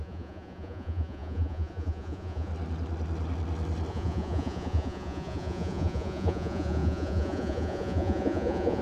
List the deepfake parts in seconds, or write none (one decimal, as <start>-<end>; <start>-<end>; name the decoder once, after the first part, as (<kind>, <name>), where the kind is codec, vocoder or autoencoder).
0.0-2.5 (vocoder, Vocos); 3.9-8.8